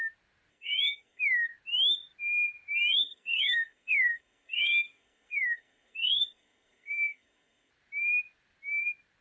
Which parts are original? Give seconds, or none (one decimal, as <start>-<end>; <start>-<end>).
0.0-0.5; 1.2-2.9; 7.7-9.2